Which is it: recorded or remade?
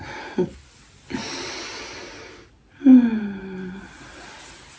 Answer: recorded